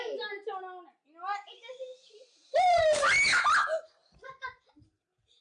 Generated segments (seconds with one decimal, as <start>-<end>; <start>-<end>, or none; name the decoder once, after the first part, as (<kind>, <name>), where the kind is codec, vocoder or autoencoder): 2.0-2.8 (vocoder, BigVGAN v2)